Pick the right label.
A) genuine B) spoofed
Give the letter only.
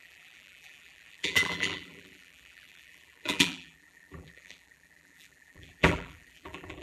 B